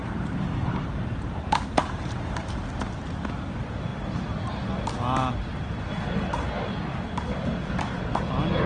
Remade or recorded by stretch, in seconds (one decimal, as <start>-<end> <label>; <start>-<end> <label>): 0.0-2.6 remade; 2.6-8.7 recorded